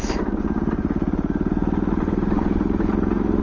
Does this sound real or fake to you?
real